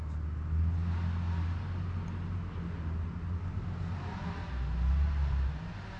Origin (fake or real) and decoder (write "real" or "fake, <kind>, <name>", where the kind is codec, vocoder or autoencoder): real